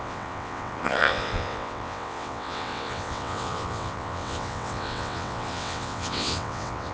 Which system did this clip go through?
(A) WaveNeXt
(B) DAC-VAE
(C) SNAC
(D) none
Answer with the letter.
A